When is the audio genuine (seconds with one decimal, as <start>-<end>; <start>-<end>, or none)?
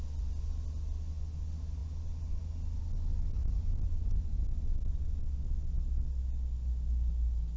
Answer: 0.0-7.6